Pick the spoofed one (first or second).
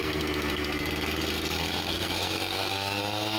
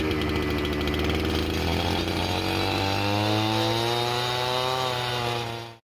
first